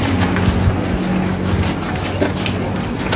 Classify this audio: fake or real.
real